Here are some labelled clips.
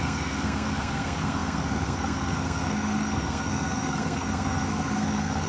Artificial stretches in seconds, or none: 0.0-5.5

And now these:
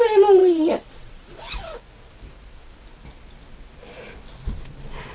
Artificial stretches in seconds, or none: 0.4-1.9